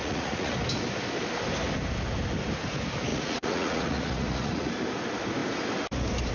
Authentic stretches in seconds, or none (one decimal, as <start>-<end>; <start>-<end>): 0.5-3.1; 4.7-6.3